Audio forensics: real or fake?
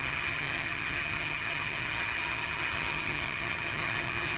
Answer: fake